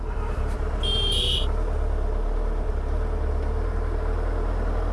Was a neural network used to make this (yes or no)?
no